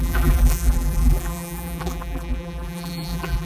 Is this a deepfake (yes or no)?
yes